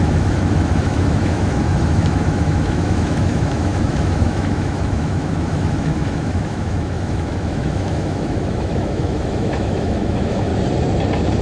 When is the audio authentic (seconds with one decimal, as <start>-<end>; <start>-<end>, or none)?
10.5-11.4